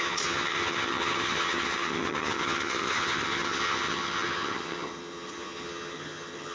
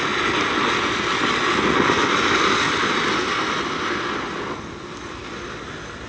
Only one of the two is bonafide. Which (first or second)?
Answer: second